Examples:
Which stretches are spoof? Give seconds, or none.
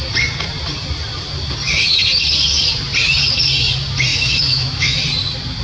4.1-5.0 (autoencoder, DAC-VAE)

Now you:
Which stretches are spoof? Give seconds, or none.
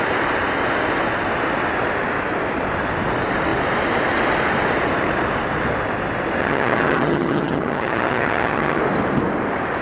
6.4-8.8 (vocoder, HiFi-GAN)